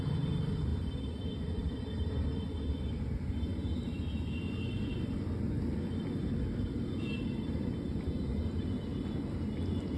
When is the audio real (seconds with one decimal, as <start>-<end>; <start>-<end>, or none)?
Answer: 0.0-10.0